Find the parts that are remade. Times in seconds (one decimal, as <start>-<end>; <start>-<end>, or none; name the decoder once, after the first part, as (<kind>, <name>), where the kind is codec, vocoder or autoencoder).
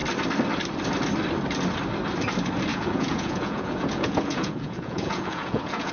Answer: 2.7-5.9 (vocoder, Vocos)